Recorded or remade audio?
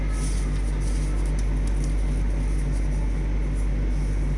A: recorded